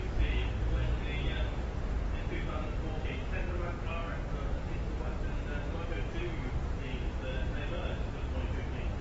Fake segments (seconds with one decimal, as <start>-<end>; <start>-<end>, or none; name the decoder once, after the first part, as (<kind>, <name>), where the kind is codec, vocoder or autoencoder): none